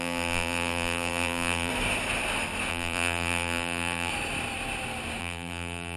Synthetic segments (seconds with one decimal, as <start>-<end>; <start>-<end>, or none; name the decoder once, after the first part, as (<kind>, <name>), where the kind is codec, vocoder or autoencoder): 0.0-1.7 (vocoder, BigVGAN v2); 2.7-4.1; 5.2-6.0